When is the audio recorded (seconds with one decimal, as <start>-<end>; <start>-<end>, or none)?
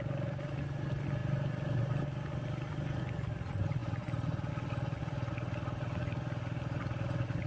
0.0-1.2; 2.1-7.5